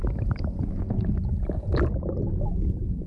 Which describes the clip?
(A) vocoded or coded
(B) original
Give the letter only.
B